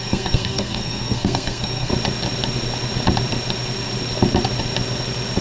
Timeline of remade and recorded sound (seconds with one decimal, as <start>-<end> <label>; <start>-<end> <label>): 0.0-1.9 remade; 1.9-5.4 recorded